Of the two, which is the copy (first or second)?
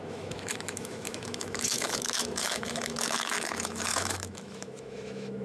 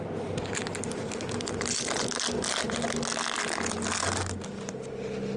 first